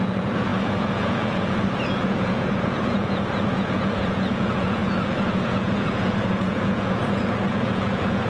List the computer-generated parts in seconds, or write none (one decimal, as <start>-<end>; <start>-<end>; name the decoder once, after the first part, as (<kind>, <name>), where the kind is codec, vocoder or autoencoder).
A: 0.0-8.3 (vocoder, Vocos)